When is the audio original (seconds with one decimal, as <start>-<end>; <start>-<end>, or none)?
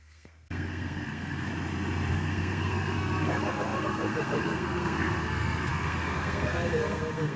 1.5-2.1